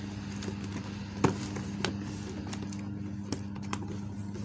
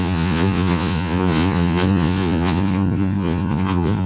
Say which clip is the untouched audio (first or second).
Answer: first